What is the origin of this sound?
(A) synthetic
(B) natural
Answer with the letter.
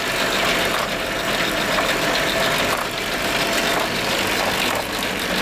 B